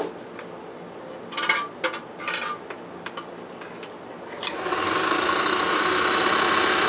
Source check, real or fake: real